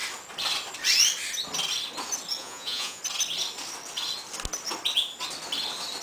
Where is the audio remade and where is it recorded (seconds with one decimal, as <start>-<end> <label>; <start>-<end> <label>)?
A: 0.0-2.4 recorded; 2.4-3.0 remade; 3.0-6.0 recorded